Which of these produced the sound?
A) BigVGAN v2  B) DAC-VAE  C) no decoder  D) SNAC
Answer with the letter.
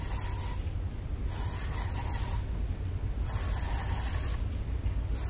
C